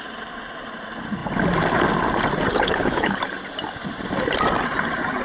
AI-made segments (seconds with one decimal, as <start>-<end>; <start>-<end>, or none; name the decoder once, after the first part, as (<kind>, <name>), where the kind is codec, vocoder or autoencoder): 2.5-3.2 (codec, HILCodec)